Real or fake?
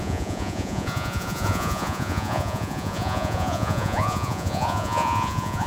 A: fake